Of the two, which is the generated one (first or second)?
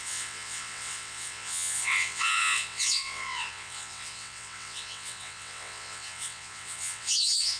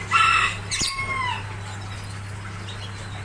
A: first